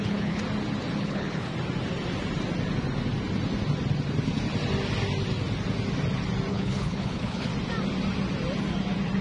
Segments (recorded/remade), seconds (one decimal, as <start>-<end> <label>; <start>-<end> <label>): 0.0-0.4 remade; 0.4-1.0 recorded; 1.0-1.5 remade; 1.5-6.5 recorded; 6.5-7.5 remade; 7.5-9.2 recorded